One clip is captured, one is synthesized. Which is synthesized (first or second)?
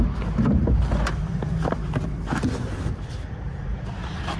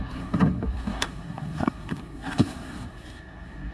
second